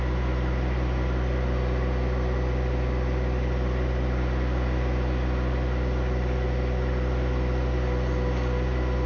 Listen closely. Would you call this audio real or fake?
real